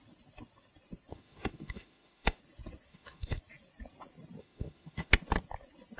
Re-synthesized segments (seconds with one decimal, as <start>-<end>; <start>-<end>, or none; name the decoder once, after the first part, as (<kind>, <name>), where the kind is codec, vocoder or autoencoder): 1.1-2.4 (autoencoder, DAC-VAE); 2.9-3.4; 4.4-5.1